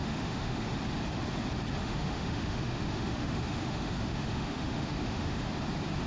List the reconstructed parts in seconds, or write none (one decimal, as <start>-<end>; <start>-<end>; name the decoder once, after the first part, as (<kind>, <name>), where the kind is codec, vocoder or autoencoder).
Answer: 0.0-0.6 (autoencoder, DAC-VAE); 1.8-5.5